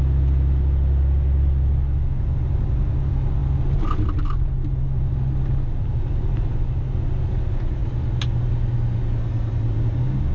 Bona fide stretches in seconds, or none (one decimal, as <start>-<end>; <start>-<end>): 0.0-10.3